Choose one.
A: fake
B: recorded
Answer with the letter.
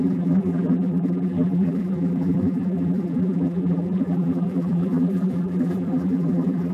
A